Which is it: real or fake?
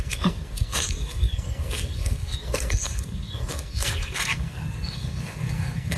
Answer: fake